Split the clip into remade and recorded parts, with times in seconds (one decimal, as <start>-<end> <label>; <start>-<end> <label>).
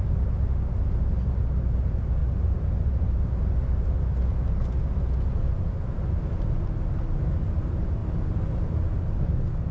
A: 0.0-9.7 recorded